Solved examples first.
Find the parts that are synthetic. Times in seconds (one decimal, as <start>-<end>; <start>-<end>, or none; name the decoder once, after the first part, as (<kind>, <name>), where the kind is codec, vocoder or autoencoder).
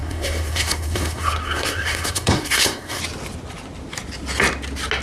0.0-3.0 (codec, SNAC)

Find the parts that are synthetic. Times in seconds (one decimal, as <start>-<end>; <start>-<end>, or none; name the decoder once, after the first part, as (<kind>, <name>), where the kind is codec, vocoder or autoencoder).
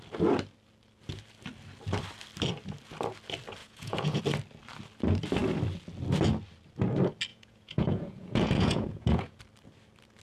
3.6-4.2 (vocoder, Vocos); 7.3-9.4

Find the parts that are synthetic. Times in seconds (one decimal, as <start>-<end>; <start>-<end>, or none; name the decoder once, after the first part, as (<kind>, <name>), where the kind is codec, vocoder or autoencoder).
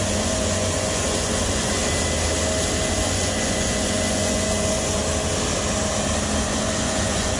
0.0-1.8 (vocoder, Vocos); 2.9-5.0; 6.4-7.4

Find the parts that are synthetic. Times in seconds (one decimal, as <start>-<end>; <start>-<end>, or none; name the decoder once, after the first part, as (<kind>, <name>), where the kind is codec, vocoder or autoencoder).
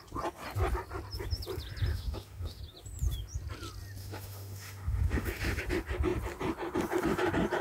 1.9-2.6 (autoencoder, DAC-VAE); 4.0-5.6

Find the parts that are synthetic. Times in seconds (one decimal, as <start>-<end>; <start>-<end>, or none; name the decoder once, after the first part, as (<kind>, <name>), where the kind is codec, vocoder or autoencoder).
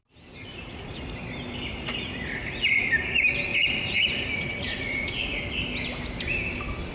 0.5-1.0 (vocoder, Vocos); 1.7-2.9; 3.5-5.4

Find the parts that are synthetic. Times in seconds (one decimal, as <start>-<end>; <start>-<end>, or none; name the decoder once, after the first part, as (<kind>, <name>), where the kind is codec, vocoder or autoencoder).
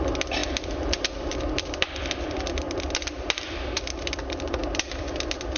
0.0-5.6 (vocoder, BigVGAN v2)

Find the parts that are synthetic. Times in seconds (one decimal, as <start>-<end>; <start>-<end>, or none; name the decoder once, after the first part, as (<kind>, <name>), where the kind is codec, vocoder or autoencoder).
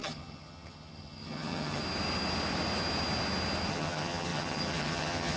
0.0-1.8 (vocoder, HiFi-GAN); 3.7-5.4